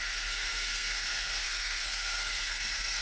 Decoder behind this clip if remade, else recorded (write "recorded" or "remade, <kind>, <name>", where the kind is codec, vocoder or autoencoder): remade, codec, SNAC